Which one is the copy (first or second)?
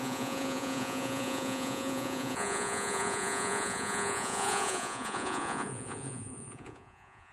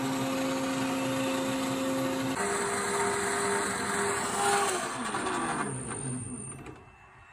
first